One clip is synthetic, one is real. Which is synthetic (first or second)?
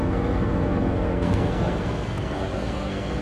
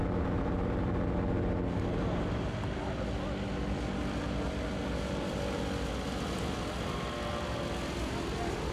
first